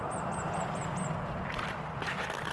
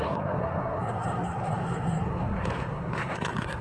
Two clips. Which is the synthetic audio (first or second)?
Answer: second